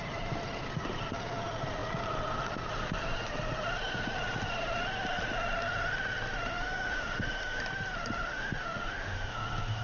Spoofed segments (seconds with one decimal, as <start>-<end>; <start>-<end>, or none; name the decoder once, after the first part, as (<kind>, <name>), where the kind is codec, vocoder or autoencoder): 6.5-7.6 (autoencoder, DAC-VAE); 8.2-9.8